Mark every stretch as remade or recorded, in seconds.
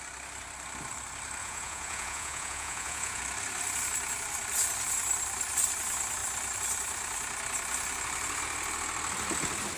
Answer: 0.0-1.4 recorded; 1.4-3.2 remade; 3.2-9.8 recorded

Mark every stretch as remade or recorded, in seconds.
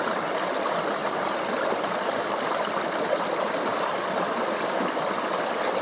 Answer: 0.0-5.8 recorded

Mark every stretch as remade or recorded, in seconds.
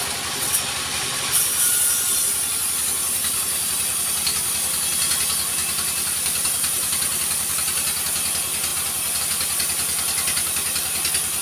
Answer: 0.0-5.6 recorded; 5.6-7.5 remade; 7.5-11.4 recorded